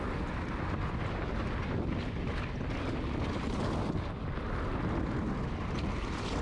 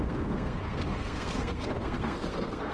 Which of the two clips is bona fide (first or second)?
first